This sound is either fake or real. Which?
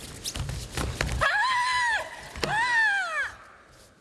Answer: real